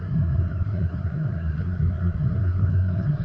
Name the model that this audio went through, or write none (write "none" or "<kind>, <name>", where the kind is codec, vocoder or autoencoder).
codec, SNAC